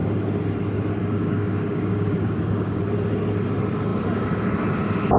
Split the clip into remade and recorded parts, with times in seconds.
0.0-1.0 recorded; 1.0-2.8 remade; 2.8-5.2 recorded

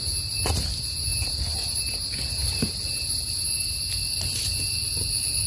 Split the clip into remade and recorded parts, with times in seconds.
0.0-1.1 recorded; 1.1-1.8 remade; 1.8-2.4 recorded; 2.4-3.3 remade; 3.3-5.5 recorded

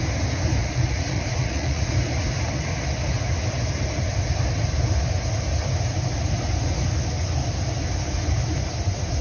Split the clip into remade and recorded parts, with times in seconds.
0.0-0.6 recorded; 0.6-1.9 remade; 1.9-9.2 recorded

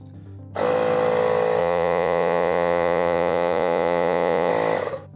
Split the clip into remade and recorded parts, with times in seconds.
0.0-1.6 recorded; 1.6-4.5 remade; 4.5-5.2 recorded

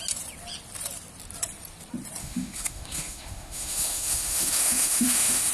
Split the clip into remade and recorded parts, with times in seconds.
0.0-2.2 recorded; 2.2-5.5 remade

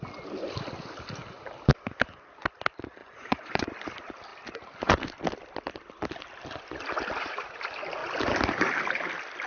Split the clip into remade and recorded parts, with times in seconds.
0.0-3.0 recorded; 3.0-3.7 remade; 3.7-9.5 recorded

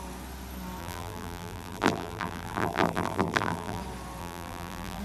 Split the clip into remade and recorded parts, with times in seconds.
0.0-0.8 recorded; 0.8-3.8 remade; 3.8-4.2 recorded; 4.2-5.0 remade

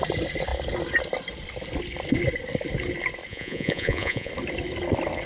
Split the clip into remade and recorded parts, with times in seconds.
0.0-3.3 recorded; 3.3-4.3 remade; 4.3-5.3 recorded